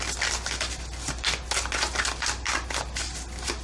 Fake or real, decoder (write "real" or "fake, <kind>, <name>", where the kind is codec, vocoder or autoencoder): real